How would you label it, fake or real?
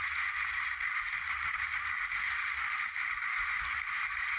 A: real